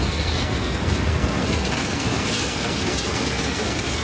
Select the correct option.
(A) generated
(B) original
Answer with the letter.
A